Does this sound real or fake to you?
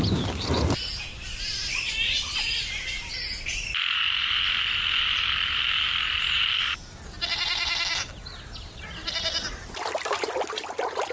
real